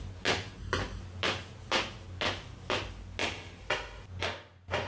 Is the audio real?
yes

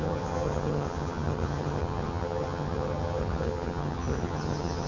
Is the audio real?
no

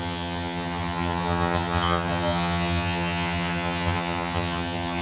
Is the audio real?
no